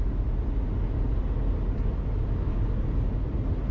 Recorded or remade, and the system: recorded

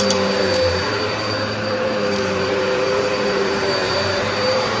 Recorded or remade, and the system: remade, vocoder, BigVGAN v2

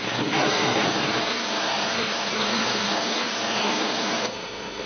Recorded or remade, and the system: remade, codec, SNAC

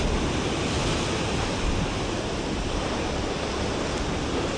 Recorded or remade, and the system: recorded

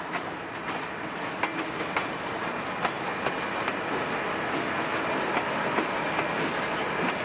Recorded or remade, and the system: recorded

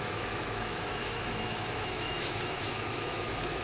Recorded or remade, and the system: remade, autoencoder, DAC-VAE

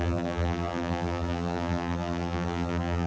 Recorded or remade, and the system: remade, vocoder, BigVGAN v2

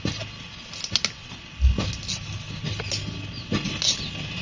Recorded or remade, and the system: recorded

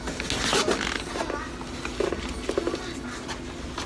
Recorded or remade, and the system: recorded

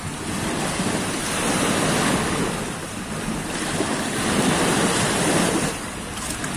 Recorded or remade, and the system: recorded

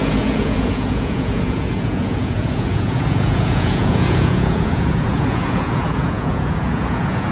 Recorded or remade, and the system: remade, vocoder, Vocos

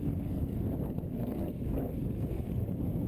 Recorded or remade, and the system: remade, codec, SNAC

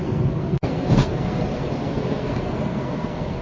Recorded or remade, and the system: remade, codec, SNAC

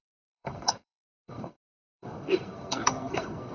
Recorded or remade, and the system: remade, codec, SNAC